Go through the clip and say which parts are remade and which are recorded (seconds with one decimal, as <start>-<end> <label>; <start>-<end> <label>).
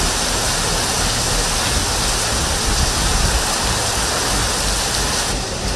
0.0-5.8 recorded